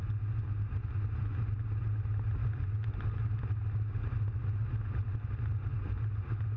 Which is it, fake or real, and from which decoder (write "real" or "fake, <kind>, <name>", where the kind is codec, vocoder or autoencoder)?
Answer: real